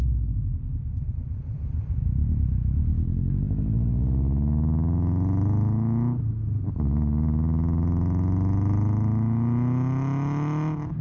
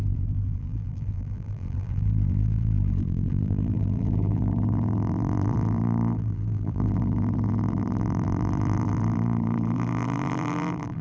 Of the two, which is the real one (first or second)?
first